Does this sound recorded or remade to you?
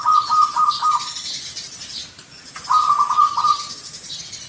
recorded